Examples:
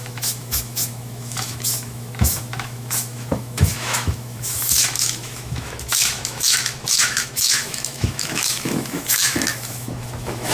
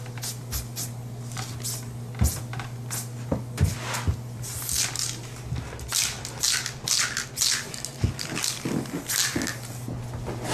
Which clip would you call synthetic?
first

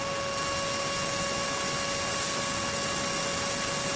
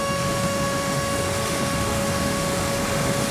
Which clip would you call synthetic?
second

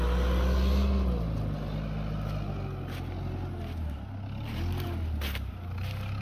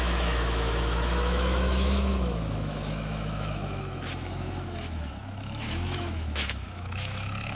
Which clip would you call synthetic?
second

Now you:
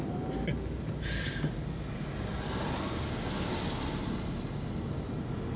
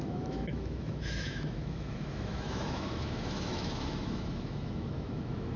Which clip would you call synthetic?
second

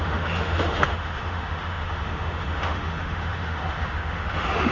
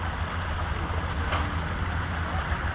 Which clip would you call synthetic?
first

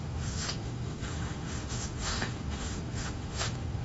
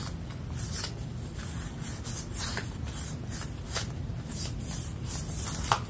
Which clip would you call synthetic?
first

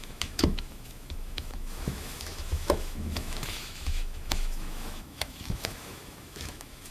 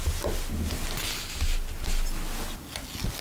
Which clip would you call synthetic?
first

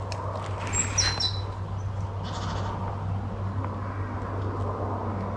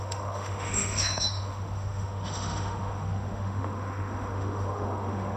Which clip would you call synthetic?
second